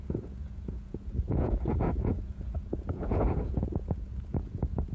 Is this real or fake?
fake